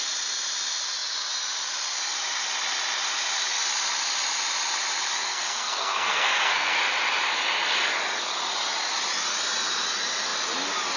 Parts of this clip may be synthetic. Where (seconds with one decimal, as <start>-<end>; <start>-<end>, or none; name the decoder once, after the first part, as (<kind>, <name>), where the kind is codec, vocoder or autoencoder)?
5.3-6.8 (codec, SNAC)